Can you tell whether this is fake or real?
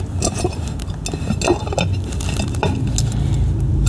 real